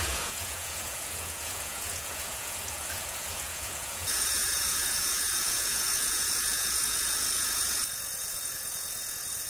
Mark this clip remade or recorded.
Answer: remade